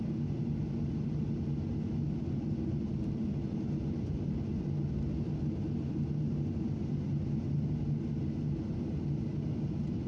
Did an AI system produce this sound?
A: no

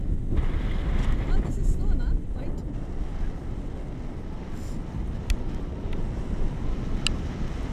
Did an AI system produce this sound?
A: no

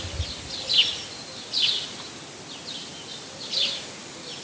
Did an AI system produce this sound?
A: no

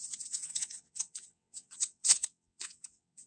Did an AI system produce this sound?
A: yes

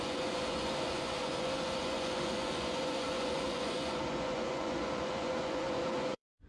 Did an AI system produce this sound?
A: yes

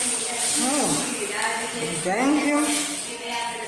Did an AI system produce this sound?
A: no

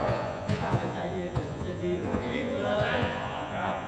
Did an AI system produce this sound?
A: yes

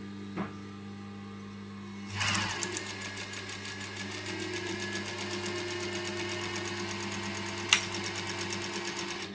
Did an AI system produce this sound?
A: no